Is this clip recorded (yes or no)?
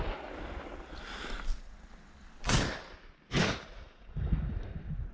yes